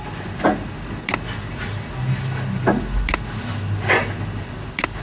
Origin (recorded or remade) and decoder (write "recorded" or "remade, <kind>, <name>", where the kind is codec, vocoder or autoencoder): recorded